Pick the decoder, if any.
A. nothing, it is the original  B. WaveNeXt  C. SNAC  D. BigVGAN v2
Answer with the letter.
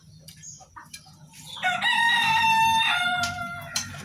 A